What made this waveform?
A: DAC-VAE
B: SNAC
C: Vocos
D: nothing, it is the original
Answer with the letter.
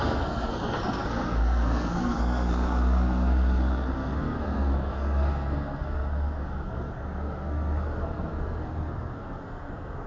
B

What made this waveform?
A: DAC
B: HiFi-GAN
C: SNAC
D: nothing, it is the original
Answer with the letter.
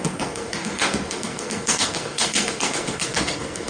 C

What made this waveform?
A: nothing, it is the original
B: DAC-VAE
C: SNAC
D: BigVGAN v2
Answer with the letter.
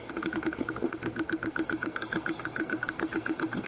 C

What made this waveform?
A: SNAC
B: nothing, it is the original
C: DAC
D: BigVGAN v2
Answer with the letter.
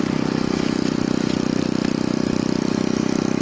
B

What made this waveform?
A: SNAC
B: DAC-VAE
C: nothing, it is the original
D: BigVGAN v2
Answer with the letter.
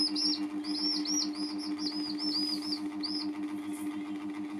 C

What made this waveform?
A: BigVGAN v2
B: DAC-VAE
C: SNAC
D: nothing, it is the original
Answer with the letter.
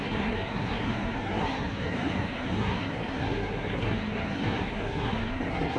C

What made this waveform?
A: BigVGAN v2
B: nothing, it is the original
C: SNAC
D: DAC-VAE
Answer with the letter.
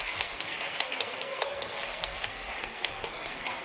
C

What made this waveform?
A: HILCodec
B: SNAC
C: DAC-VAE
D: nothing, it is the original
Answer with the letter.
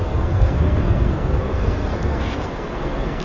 B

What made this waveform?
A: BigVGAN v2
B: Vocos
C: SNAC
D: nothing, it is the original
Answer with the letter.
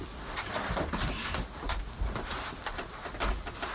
D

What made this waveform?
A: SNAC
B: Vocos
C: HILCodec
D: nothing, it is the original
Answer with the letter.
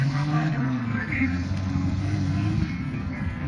A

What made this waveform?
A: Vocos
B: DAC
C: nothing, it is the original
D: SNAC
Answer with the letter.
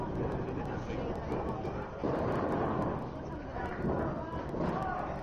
C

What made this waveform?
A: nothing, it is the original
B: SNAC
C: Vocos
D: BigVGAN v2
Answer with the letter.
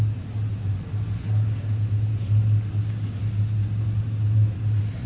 A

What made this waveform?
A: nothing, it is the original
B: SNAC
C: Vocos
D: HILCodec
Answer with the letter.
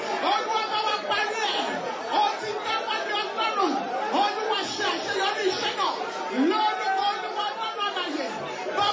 A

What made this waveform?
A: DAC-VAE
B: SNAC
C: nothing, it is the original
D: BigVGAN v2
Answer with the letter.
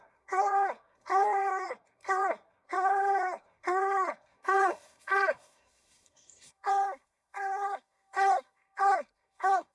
B